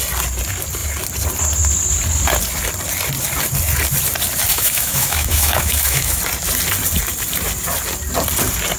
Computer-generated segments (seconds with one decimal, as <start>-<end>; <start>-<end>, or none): 4.5-6.2

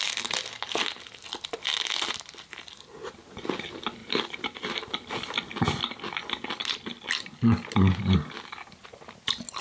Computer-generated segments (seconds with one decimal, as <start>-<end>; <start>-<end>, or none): 4.0-5.1

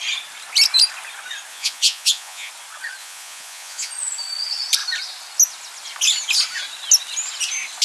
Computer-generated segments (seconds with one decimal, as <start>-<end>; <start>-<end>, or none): 1.5-2.5; 3.0-3.9

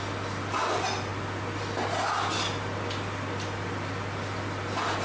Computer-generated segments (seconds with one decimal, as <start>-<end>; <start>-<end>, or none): none